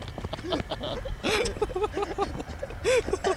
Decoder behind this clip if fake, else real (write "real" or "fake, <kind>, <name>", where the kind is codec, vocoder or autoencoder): real